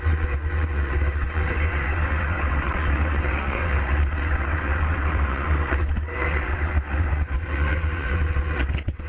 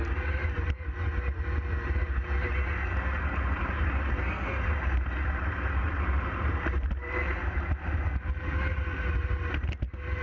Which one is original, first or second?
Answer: second